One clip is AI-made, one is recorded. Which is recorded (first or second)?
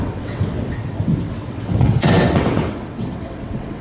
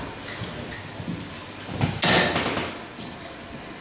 second